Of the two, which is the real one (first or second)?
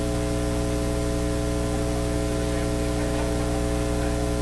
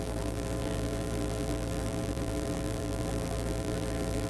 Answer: first